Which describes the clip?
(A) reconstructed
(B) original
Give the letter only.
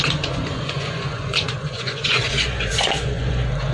A